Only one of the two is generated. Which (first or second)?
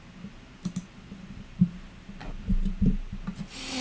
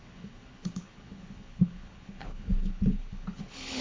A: second